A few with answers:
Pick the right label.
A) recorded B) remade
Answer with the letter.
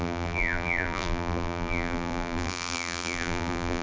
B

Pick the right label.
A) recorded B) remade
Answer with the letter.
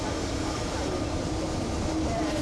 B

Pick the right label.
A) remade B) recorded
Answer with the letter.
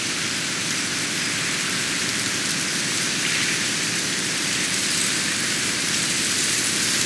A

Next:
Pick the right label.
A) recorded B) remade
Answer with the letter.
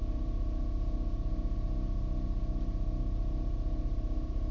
B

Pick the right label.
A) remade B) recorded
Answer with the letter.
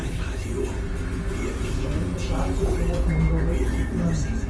B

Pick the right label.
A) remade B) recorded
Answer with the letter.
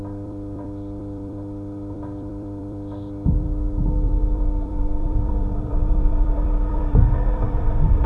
A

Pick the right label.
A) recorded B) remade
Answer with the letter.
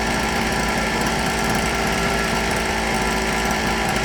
B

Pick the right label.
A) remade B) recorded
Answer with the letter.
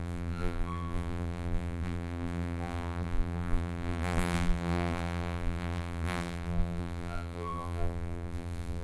A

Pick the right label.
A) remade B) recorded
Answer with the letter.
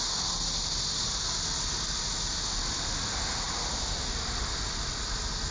B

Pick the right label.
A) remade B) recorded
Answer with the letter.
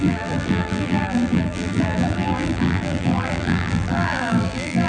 A